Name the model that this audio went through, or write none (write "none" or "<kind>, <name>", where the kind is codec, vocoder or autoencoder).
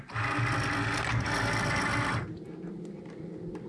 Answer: none